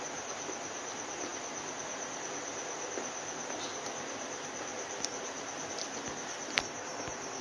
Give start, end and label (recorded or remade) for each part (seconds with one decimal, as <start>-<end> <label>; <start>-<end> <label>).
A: 0.0-7.4 recorded